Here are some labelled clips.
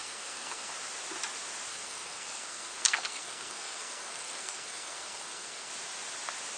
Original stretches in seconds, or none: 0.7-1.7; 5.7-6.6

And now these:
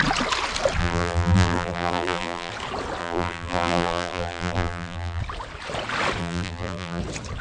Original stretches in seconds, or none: 0.0-0.8; 2.5-3.0; 5.2-6.2; 7.0-7.4

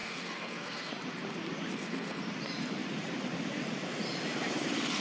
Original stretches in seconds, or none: 0.9-1.7; 2.2-5.0

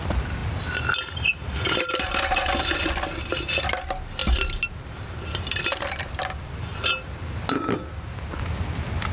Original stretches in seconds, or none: 0.0-9.1

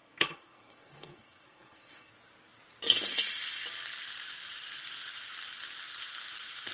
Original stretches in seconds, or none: 2.1-6.7